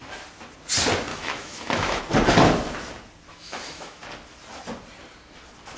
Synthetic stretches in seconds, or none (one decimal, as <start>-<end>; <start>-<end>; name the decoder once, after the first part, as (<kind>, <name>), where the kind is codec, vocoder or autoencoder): 1.1-2.0 (autoencoder, DAC-VAE); 3.3-4.0